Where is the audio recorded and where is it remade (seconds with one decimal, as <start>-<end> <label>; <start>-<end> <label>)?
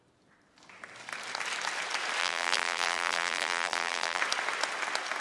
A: 0.0-2.2 recorded; 2.2-4.2 remade; 4.2-5.2 recorded